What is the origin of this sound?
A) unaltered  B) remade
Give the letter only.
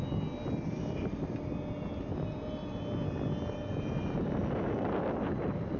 A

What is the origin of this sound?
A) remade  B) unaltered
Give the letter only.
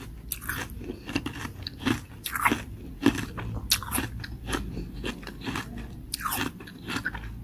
B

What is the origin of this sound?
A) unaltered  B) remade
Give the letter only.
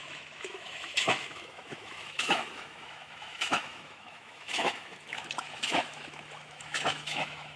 B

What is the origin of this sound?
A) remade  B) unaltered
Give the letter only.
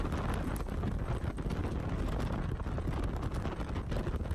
B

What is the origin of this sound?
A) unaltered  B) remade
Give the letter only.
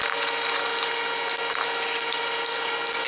A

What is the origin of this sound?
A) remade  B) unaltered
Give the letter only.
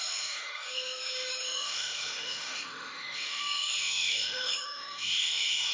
A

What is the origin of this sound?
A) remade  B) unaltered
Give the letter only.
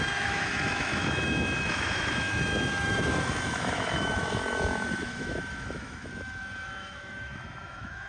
A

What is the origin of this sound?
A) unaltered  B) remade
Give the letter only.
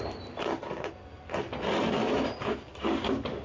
A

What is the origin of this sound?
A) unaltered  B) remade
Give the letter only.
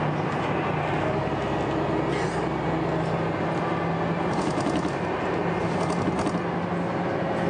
A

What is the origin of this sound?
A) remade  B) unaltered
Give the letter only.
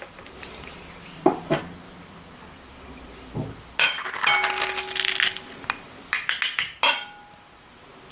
B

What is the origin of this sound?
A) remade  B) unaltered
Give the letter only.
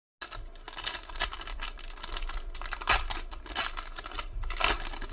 B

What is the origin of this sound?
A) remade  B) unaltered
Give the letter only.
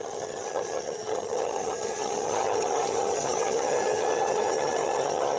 A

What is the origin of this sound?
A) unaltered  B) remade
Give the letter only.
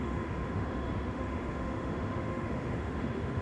B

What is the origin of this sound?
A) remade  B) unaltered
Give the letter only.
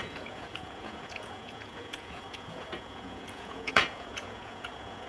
A